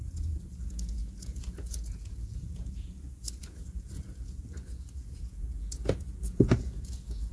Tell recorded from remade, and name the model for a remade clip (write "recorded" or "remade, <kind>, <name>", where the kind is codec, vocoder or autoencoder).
remade, vocoder, Vocos